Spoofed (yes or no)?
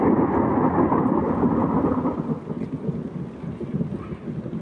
no